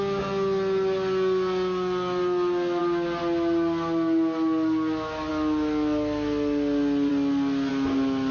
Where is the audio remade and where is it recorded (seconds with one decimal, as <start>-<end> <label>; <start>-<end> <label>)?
0.0-8.3 recorded